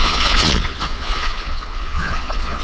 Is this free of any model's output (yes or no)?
no